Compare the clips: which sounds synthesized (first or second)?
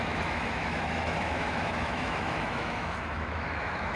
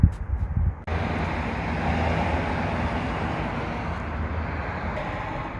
first